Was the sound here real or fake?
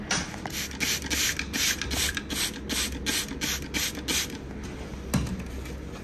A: real